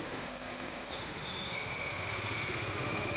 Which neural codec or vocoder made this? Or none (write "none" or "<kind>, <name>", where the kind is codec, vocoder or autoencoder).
autoencoder, DAC-VAE